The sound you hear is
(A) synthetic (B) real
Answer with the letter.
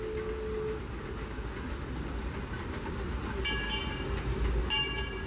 B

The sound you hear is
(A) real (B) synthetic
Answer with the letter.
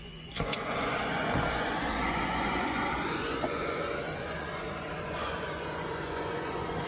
B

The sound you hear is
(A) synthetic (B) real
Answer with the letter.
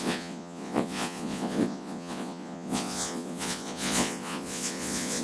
A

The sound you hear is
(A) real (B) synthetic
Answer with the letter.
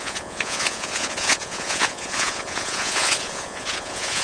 B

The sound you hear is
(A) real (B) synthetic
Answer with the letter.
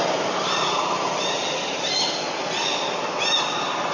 A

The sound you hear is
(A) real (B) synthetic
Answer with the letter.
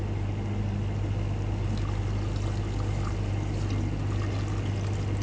A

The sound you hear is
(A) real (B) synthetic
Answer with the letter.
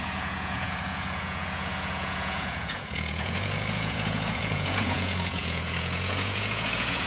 B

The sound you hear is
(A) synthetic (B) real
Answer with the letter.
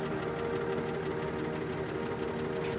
B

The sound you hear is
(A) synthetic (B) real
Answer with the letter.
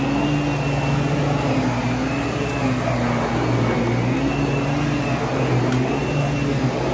B